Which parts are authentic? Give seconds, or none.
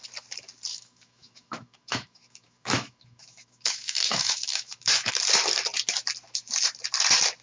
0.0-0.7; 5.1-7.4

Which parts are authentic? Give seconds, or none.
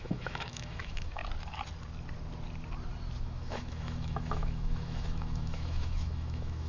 1.2-3.2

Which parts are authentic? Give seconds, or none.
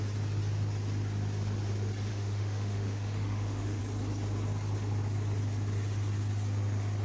0.0-2.1; 3.8-7.0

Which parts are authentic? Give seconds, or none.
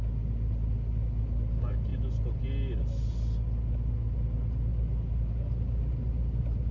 0.0-6.7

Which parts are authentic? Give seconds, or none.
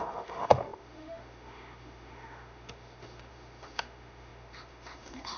none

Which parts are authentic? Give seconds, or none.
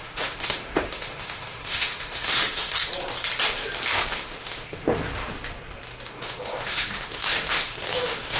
2.9-4.1; 5.0-6.1